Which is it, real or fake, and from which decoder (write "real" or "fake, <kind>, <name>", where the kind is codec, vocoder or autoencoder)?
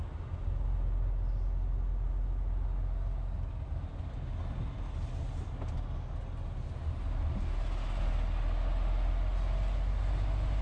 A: real